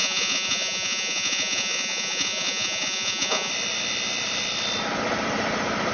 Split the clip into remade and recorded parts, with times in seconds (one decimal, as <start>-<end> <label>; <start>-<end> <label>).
0.0-3.5 remade; 3.5-5.9 recorded